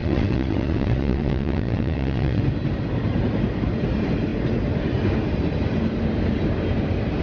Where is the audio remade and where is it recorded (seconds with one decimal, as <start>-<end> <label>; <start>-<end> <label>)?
0.0-2.4 remade; 2.4-7.2 recorded